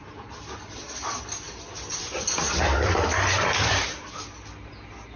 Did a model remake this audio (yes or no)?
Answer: no